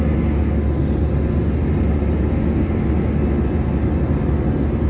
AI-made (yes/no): no